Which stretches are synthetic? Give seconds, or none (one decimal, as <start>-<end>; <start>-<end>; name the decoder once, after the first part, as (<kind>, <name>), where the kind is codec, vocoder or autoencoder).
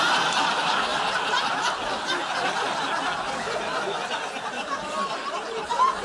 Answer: none